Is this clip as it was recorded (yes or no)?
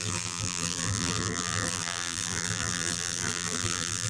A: no